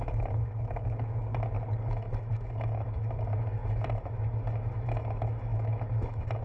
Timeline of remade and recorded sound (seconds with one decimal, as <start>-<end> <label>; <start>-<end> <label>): 0.0-1.3 remade; 1.3-1.8 recorded; 1.8-6.4 remade